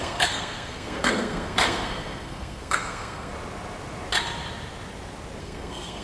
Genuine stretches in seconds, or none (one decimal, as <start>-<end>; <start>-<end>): 3.3-5.4